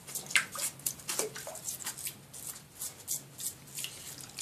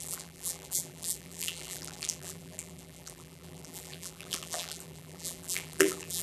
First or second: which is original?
first